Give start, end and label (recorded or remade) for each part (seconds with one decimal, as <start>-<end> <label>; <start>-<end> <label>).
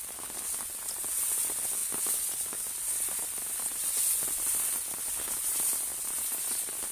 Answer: 0.0-6.9 recorded